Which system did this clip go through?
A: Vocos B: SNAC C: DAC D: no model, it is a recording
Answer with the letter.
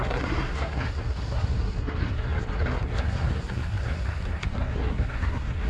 B